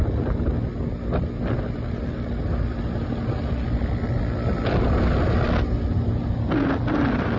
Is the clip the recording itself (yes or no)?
yes